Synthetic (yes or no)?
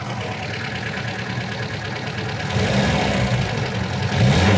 no